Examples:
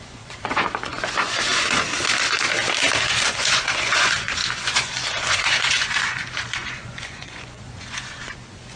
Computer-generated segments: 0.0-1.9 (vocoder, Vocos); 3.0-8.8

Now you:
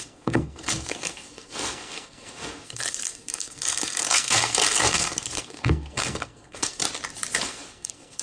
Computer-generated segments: 0.0-6.8 (codec, SNAC); 7.4-8.2

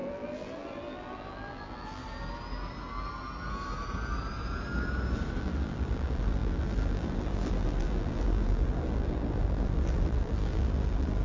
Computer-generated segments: 0.0-2.0 (vocoder, BigVGAN v2); 5.4-11.2

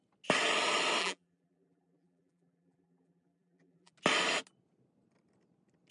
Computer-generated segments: 1.0-3.9 (vocoder, BigVGAN v2)